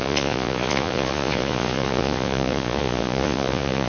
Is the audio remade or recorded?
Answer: remade